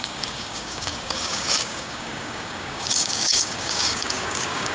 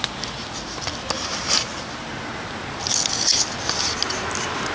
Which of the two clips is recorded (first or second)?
second